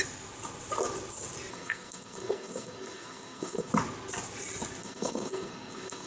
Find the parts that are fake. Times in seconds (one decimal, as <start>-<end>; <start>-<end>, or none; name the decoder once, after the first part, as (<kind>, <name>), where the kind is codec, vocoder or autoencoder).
1.5-3.7 (codec, SNAC); 4.8-6.1